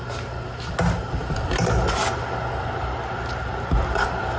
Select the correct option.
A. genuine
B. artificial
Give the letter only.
A